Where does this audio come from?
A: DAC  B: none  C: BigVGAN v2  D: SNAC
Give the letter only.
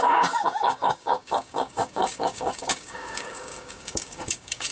A